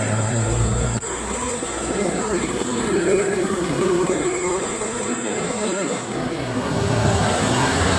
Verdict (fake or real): fake